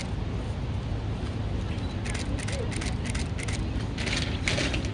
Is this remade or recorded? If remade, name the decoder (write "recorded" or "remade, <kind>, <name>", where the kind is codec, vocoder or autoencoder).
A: recorded